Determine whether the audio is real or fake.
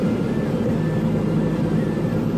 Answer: real